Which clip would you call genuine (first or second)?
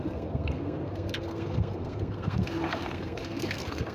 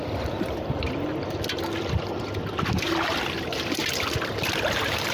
second